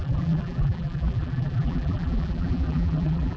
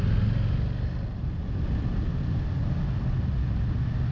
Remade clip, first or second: first